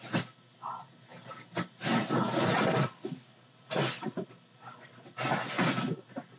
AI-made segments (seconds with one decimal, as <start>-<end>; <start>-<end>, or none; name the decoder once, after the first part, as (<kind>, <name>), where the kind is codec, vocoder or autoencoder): none